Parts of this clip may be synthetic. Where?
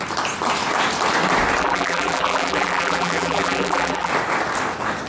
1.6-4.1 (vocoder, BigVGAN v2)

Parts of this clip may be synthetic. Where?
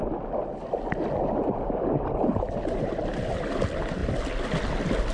none